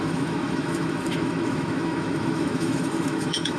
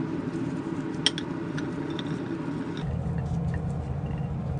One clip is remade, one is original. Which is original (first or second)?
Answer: second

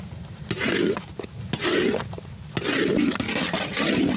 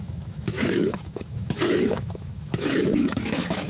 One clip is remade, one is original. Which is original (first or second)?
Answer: first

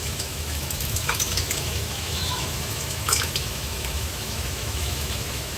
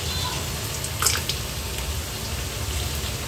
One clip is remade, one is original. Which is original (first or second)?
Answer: second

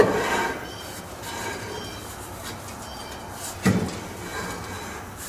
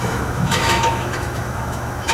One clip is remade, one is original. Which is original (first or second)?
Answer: first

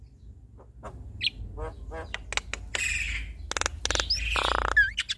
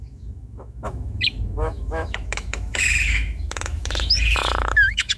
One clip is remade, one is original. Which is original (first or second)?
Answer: first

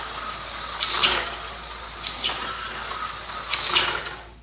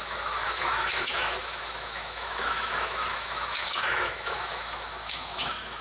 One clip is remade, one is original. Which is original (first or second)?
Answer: first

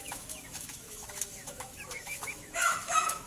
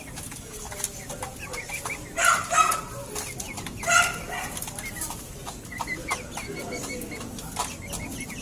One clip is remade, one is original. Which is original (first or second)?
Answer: second